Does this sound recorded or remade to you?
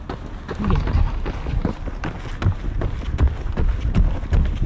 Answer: recorded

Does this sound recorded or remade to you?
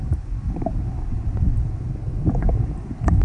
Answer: recorded